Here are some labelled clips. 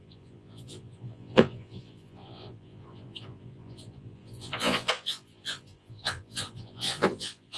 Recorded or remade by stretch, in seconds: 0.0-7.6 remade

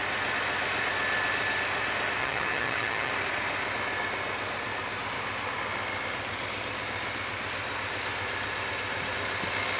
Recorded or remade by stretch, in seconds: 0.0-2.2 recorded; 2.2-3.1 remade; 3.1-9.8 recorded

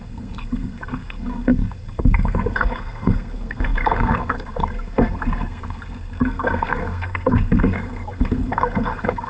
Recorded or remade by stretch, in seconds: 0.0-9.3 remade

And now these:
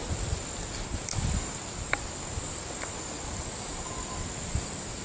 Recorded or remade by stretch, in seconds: 0.0-5.0 recorded

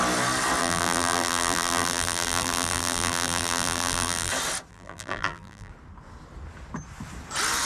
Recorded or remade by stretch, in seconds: 0.0-0.6 recorded; 0.6-4.3 remade; 4.3-4.7 recorded; 4.7-5.7 remade; 5.7-7.7 recorded